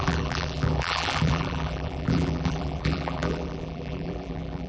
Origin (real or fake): fake